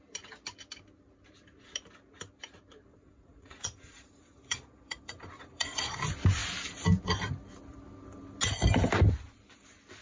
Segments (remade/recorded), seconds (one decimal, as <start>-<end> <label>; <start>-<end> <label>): 0.0-2.9 recorded; 2.9-6.0 remade; 6.0-10.0 recorded